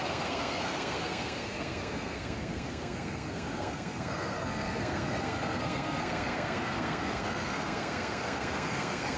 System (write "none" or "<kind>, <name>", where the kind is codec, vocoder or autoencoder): codec, SNAC